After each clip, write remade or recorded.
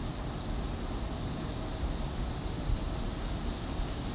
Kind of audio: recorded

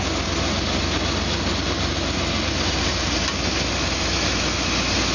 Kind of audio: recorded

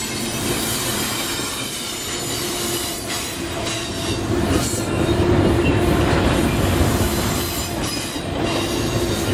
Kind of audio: recorded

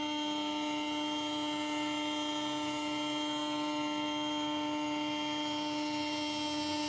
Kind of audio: recorded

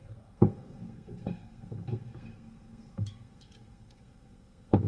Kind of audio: remade